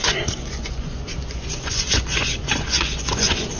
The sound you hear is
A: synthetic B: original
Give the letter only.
A